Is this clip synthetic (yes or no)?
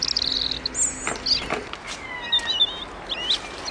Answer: no